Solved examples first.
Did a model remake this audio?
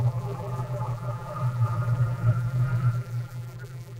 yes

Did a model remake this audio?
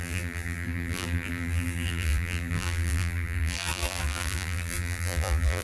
yes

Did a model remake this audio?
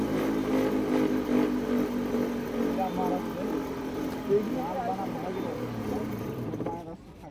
no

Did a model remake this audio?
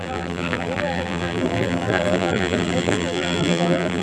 yes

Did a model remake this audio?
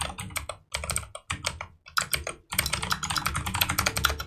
no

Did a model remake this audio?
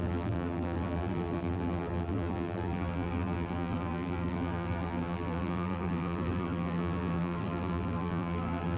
yes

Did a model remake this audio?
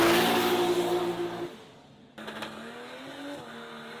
no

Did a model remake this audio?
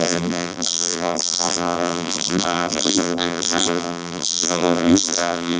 yes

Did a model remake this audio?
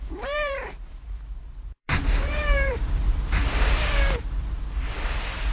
yes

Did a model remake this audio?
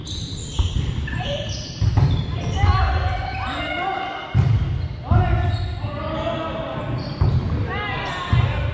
no